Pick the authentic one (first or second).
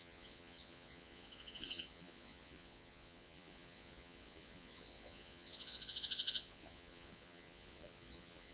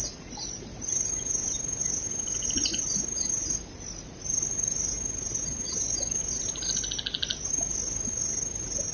second